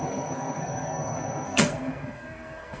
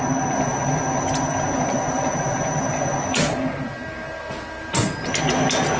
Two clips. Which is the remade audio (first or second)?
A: first